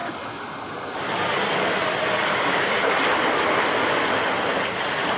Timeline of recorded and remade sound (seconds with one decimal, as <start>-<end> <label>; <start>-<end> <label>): 0.0-5.2 recorded